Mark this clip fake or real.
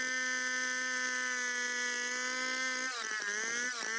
real